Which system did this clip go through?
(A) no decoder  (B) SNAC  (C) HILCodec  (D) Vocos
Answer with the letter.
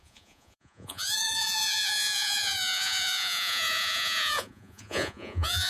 D